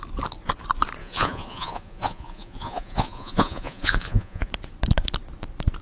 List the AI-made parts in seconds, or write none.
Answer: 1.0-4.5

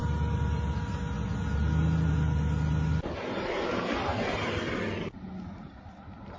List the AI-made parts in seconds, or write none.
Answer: none